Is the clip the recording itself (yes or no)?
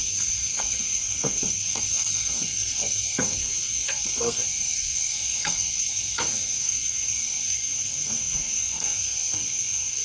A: no